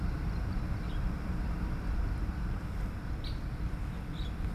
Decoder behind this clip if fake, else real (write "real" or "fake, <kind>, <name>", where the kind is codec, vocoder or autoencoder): fake, vocoder, BigVGAN v2